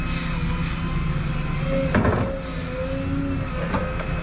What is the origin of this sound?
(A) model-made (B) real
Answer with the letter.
B